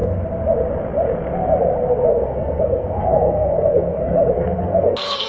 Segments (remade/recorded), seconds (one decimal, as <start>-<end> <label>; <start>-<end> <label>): 0.0-2.1 recorded; 2.1-5.3 remade